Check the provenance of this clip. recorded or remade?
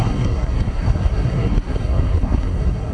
remade